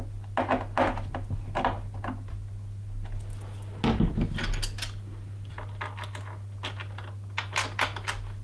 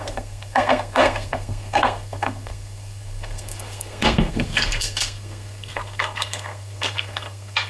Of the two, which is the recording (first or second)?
first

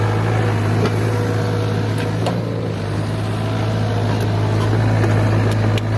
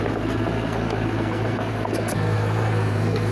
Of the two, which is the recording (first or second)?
first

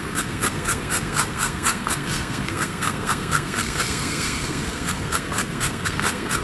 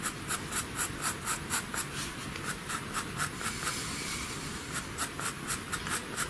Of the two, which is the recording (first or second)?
second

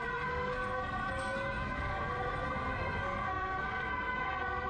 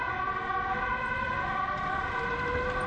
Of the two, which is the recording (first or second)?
second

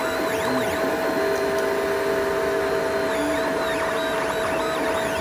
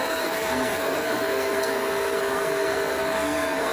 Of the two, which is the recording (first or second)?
first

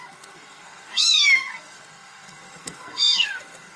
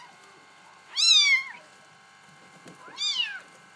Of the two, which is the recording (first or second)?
second